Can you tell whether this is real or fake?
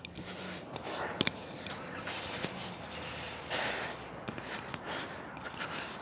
real